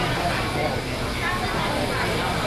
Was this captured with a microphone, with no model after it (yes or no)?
yes